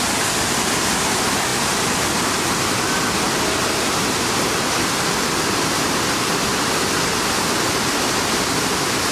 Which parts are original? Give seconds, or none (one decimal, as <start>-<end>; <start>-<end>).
0.0-9.1